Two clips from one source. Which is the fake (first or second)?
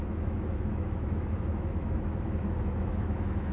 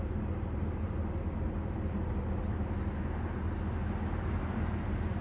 first